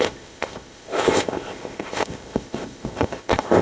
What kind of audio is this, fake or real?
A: fake